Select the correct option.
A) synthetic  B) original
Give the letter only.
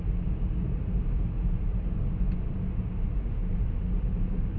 B